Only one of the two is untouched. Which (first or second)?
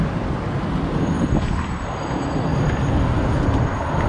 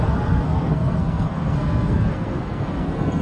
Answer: first